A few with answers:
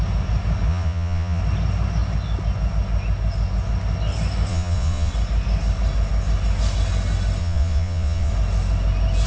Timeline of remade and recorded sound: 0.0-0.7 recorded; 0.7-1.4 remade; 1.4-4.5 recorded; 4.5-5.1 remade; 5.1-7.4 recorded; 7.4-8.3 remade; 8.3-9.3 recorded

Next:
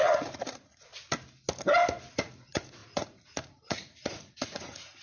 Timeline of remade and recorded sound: 0.0-0.9 remade; 0.9-2.1 recorded; 2.1-5.0 remade